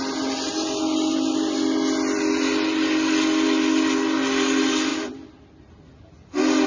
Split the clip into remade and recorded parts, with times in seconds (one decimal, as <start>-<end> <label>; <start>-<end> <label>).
0.0-6.7 recorded